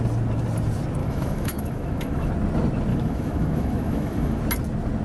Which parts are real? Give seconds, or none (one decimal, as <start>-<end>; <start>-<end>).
0.0-1.0; 2.3-2.9; 4.4-5.0

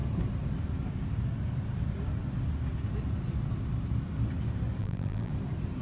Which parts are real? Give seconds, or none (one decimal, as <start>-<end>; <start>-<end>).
0.0-4.8; 5.3-5.8

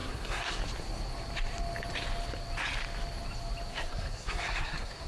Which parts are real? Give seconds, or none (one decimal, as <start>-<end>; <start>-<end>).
0.6-3.7

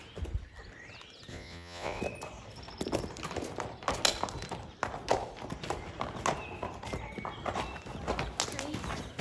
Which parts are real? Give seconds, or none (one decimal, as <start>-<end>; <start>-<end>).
0.0-1.3; 2.0-9.2

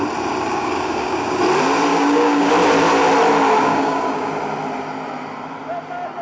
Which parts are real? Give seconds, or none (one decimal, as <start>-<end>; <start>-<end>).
0.0-0.5; 1.4-1.9; 2.5-3.6; 4.3-6.2